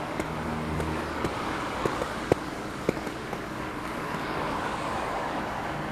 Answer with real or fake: fake